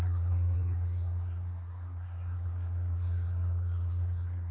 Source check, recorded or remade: remade